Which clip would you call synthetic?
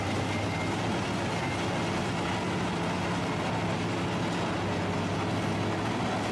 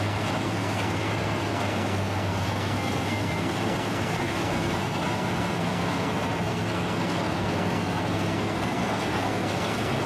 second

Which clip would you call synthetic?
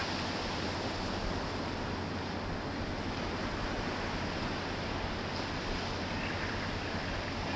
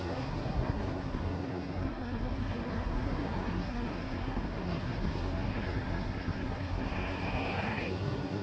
second